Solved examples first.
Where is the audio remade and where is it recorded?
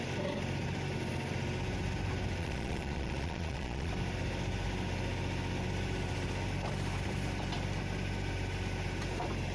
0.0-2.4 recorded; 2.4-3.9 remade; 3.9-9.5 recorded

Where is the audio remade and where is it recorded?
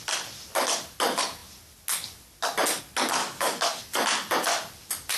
0.0-3.2 recorded; 3.2-3.8 remade; 3.8-5.2 recorded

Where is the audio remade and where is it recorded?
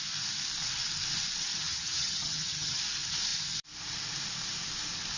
0.0-1.5 recorded; 1.5-2.8 remade; 2.8-5.2 recorded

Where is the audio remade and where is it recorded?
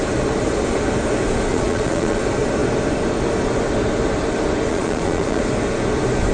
0.0-1.5 recorded; 1.5-2.2 remade; 2.2-4.7 recorded; 4.7-5.4 remade; 5.4-6.3 recorded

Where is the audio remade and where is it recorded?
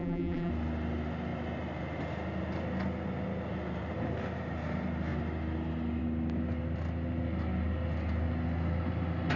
0.0-0.5 remade; 0.5-9.4 recorded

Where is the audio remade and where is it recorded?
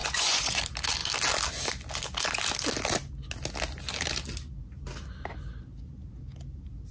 0.0-0.6 remade; 0.6-6.9 recorded